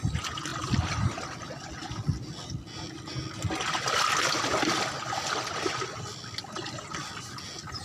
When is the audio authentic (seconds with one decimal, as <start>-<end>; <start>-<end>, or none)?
0.0-7.8